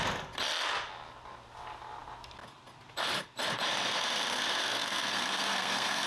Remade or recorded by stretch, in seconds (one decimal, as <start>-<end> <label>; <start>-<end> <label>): 0.0-4.7 recorded; 4.7-6.1 remade